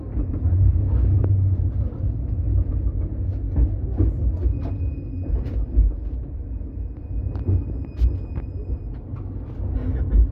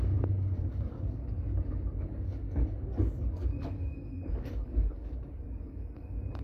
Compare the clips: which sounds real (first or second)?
first